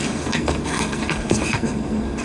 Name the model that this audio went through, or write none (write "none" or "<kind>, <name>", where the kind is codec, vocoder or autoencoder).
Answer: codec, SNAC